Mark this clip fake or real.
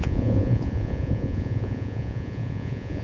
fake